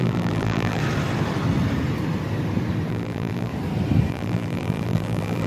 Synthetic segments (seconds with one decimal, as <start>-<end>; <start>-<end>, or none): 0.0-0.8; 2.9-3.5; 4.1-5.5